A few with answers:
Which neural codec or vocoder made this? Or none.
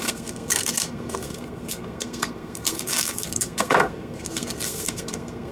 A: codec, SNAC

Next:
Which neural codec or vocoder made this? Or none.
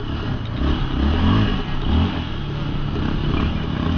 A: none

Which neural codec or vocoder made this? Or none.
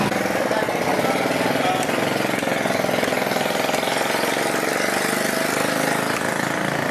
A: none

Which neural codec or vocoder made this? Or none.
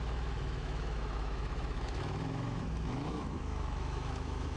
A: autoencoder, DAC-VAE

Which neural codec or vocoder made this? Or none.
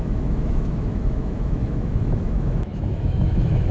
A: autoencoder, DAC-VAE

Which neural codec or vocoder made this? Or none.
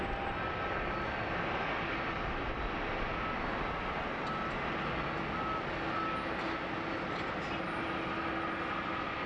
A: none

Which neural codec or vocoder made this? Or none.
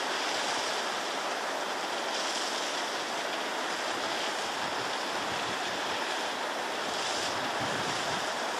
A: none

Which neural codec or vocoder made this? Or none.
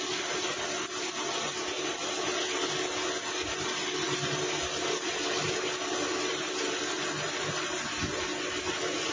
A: none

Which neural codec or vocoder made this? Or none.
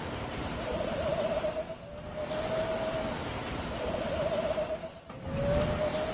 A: none